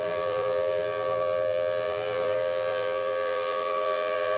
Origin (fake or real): fake